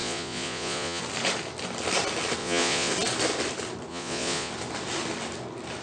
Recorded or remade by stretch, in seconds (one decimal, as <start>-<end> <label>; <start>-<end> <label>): 0.0-1.0 remade; 1.0-2.4 recorded; 2.4-2.9 remade; 2.9-3.9 recorded; 3.9-4.5 remade; 4.5-5.8 recorded